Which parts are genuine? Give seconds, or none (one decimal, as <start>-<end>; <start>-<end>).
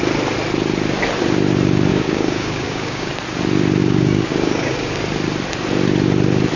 0.0-1.9; 3.1-3.8; 4.9-6.6